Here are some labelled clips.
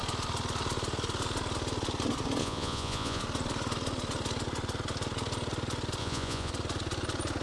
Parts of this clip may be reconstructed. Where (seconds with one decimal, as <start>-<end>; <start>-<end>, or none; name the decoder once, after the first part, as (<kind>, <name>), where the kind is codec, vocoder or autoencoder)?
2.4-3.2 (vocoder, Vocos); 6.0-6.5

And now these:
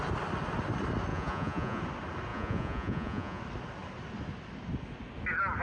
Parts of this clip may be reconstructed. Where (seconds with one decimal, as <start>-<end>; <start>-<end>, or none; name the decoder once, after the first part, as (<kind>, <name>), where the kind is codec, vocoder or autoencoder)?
1.1-1.8 (vocoder, Vocos); 2.3-3.4

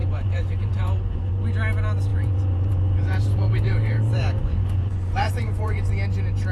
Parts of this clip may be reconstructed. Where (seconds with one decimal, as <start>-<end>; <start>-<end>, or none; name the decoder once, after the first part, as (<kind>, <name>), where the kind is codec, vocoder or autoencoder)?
0.0-1.3 (vocoder, Vocos); 2.1-5.9

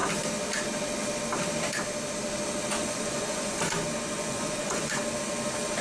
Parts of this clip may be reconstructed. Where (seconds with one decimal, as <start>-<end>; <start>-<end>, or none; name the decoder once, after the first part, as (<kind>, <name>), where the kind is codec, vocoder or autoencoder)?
2.8-3.6 (vocoder, Vocos); 4.1-5.0